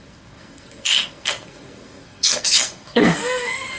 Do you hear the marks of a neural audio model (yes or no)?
yes